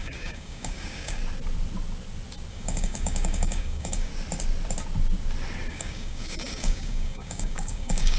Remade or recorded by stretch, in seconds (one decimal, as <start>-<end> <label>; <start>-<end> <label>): 0.0-1.2 remade; 1.2-2.5 recorded; 2.5-4.1 remade; 4.1-5.7 recorded; 5.7-8.2 remade